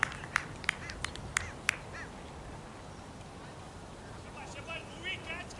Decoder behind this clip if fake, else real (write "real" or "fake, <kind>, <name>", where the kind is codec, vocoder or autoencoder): real